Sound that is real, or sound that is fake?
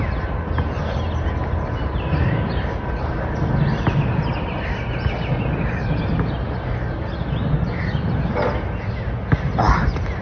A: real